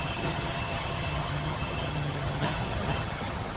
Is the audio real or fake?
fake